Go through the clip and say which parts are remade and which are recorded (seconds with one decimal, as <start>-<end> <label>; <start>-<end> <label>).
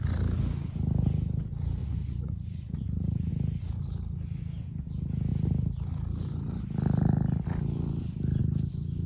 0.0-1.8 recorded; 1.8-3.3 remade; 3.3-9.1 recorded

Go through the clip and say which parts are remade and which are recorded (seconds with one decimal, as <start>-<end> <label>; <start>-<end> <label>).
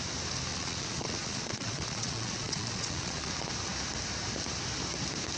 0.0-0.5 recorded; 0.5-3.3 remade; 3.3-5.4 recorded